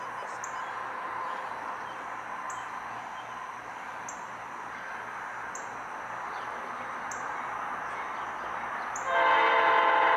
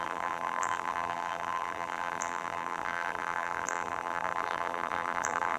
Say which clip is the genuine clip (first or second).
first